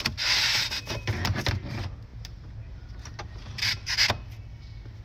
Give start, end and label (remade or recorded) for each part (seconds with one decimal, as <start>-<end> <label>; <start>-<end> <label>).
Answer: 0.0-5.0 recorded